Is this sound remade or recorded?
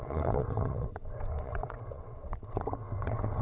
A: remade